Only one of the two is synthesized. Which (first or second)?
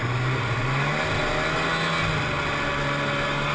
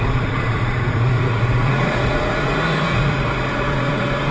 second